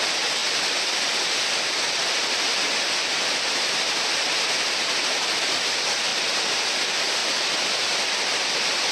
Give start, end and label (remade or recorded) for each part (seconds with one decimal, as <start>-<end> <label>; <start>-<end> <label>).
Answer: 0.0-0.4 recorded; 0.4-3.9 remade; 3.9-6.1 recorded; 6.1-6.7 remade; 6.7-7.2 recorded; 7.2-8.5 remade; 8.5-8.9 recorded